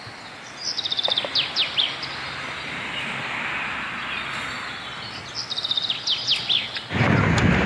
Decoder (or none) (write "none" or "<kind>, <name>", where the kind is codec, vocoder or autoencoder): none